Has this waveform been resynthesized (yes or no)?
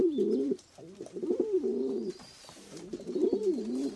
yes